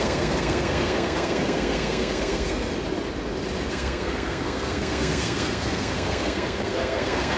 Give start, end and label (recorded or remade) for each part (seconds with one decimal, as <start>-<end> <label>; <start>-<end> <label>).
0.0-2.7 remade; 2.7-3.7 recorded; 3.7-7.4 remade